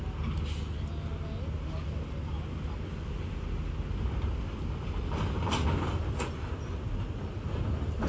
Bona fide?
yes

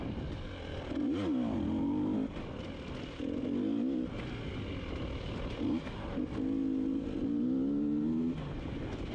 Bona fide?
yes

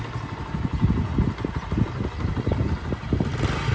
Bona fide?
yes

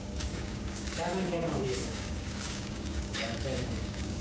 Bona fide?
no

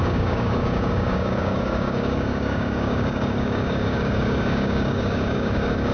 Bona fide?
no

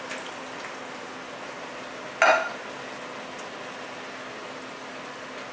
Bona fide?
yes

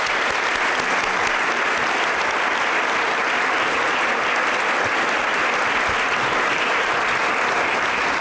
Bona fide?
yes